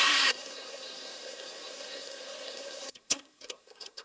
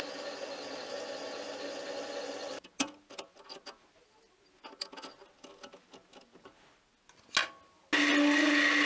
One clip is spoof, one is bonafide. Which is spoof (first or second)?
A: first